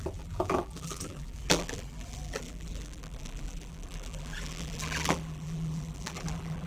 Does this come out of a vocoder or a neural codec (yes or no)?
yes